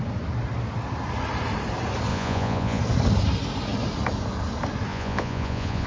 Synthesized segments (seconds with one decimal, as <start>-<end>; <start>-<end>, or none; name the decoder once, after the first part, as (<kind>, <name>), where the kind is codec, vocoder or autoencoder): 2.1-2.8 (vocoder, Vocos); 4.9-5.9

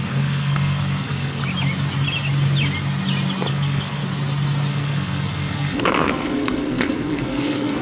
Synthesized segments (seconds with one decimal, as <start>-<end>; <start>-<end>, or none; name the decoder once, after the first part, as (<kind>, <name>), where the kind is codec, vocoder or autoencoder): 0.0-1.4 (codec, SNAC); 3.5-4.0; 4.7-7.8

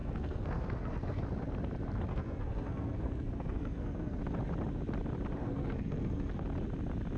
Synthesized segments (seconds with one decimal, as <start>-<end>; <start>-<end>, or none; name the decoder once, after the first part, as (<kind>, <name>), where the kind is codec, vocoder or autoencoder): 0.0-1.2 (codec, SNAC); 2.1-4.2; 5.4-6.4

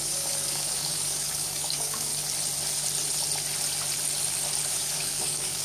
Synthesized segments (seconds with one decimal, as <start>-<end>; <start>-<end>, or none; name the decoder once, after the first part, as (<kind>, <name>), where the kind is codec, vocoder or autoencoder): 0.0-2.1 (codec, DAC); 4.7-5.6